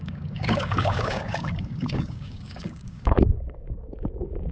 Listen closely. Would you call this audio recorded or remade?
remade